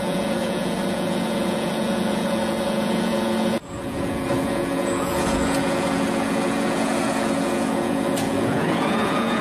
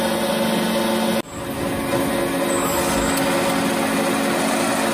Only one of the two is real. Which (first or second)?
second